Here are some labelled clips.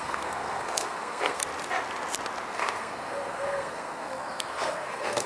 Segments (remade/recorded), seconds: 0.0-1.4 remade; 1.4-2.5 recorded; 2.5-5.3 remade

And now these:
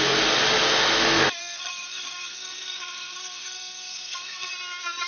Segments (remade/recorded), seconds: 0.0-1.4 recorded; 1.4-4.5 remade; 4.5-5.1 recorded

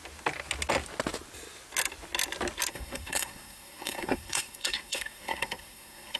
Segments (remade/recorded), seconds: 0.0-2.7 recorded; 2.7-6.2 remade

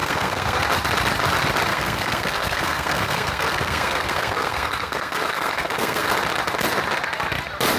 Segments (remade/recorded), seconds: 0.0-0.6 remade; 0.6-1.7 recorded; 1.7-6.1 remade; 6.1-7.8 recorded

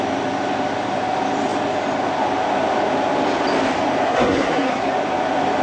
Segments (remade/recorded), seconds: 0.0-4.0 recorded; 4.0-4.9 remade; 4.9-5.6 recorded

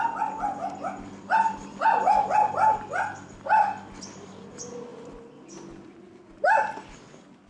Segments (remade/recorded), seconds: 0.0-7.5 recorded

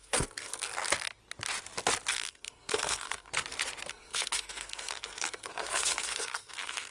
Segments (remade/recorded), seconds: 0.0-0.7 remade; 0.7-2.1 recorded; 2.1-3.3 remade; 3.3-3.9 recorded; 3.9-6.9 remade

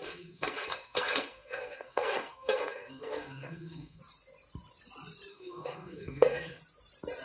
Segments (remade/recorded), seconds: 0.0-4.0 remade; 4.0-5.3 recorded; 5.3-6.6 remade; 6.6-7.2 recorded